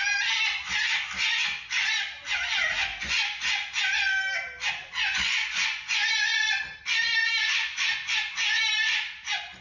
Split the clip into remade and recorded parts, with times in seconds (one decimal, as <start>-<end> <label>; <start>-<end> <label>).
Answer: 0.0-2.9 recorded; 2.9-3.7 remade; 3.7-4.8 recorded; 4.8-6.6 remade; 6.6-9.6 recorded